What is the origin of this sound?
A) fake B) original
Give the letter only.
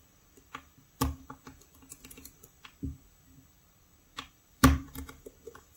A